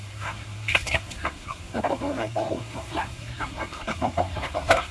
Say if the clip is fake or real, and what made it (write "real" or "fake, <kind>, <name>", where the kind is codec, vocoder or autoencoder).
fake, codec, SNAC